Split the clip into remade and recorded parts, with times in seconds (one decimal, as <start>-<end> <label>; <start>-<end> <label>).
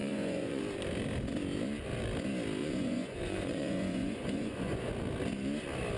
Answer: 0.0-0.6 remade; 0.6-2.6 recorded; 2.6-4.9 remade; 4.9-6.0 recorded